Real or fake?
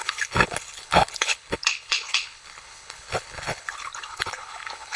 fake